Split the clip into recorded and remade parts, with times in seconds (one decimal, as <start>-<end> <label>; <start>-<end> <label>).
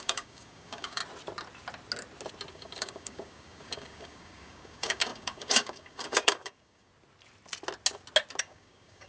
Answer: 0.0-1.0 remade; 1.0-2.5 recorded; 2.5-6.9 remade; 6.9-8.4 recorded; 8.4-9.1 remade